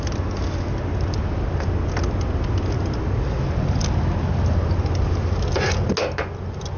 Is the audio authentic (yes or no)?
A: yes